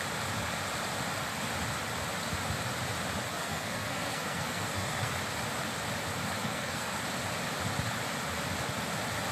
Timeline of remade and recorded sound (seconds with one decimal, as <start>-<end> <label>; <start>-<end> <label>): 0.0-3.3 recorded; 3.3-5.1 remade; 5.1-6.4 recorded; 6.4-7.0 remade; 7.0-9.3 recorded